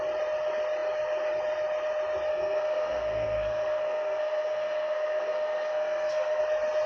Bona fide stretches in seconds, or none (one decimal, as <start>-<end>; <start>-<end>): 0.0-2.3; 6.4-6.9